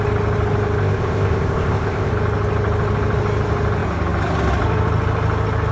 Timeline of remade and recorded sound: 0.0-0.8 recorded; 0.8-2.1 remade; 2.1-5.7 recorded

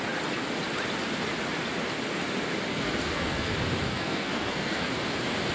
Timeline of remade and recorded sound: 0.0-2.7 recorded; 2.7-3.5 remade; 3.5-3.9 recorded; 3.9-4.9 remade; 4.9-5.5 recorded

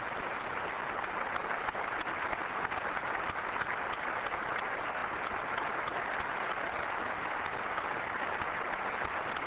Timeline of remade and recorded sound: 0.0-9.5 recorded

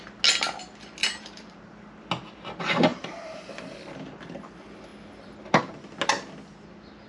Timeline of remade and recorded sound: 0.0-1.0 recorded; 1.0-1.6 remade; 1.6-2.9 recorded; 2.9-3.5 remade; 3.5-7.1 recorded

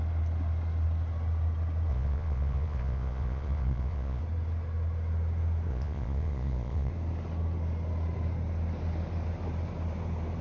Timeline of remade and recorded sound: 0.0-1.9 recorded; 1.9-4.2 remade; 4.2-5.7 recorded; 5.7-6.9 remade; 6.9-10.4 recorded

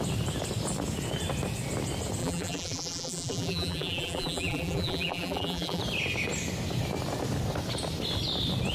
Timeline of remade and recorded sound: 0.0-2.2 recorded; 2.2-5.8 remade; 5.8-8.7 recorded

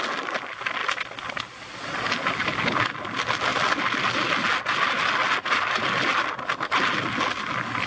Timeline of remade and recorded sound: 0.0-7.9 recorded

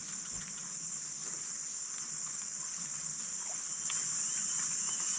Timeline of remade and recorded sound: 0.0-5.2 recorded